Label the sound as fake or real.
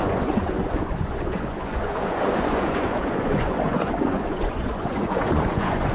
fake